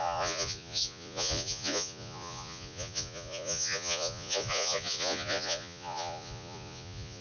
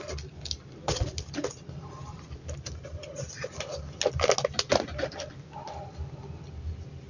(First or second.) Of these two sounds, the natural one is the second